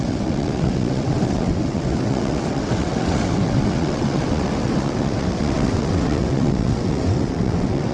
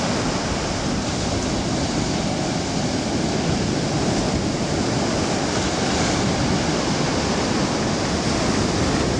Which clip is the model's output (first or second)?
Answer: first